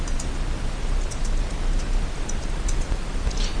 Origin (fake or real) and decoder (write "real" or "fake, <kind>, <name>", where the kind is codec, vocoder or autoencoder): real